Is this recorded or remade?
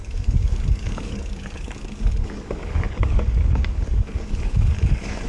remade